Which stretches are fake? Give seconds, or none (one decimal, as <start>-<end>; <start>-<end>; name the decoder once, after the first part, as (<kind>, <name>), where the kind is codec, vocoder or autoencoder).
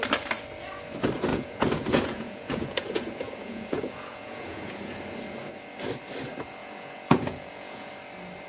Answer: 1.3-4.9 (vocoder, Vocos); 6.6-7.9